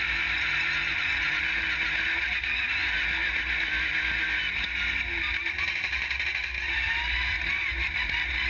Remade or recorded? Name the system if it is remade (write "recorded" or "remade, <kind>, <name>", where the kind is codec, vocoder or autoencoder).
recorded